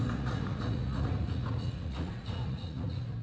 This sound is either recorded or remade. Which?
remade